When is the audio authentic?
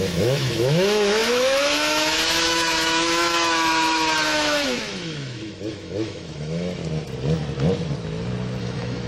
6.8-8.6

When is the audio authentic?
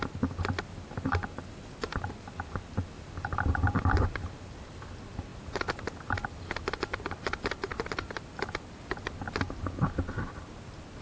0.0-11.0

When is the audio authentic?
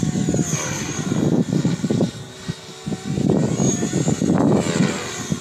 1.9-5.4